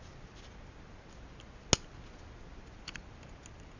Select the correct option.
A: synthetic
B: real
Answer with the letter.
B